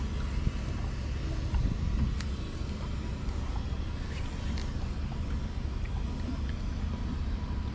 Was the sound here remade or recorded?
recorded